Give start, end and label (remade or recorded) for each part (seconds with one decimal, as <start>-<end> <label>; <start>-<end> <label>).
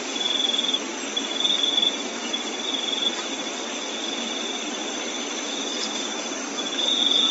0.0-7.3 recorded